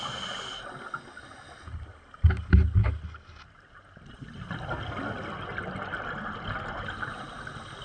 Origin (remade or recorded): recorded